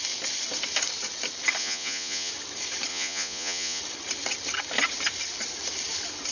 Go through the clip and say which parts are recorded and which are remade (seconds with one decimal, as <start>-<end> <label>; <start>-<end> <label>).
0.0-1.6 recorded; 1.6-2.3 remade; 2.3-2.9 recorded; 2.9-3.8 remade; 3.8-6.3 recorded